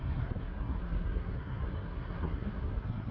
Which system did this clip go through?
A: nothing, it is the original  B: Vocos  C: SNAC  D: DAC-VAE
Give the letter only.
C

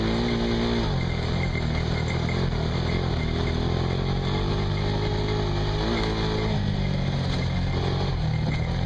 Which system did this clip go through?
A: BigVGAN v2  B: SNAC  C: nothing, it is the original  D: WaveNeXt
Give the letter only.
C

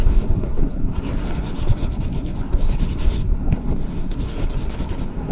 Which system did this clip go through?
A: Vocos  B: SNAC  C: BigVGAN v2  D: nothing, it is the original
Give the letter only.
B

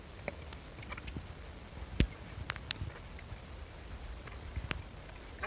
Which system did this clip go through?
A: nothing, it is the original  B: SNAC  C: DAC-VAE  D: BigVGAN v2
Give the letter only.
A